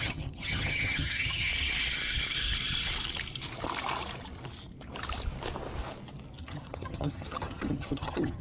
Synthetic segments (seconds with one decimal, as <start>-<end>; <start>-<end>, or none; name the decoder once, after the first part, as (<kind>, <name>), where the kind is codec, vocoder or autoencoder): 0.0-1.5 (vocoder, HiFi-GAN); 6.4-8.4